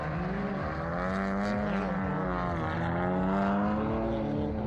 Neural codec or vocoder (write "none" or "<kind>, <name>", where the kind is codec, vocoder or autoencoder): none